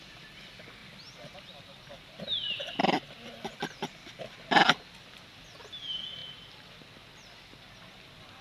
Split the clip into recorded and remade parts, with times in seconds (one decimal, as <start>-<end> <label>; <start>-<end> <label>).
0.0-8.4 recorded